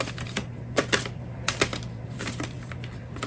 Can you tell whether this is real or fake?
fake